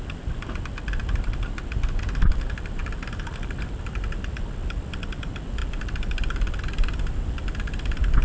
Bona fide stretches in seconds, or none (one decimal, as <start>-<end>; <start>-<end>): 0.0-8.2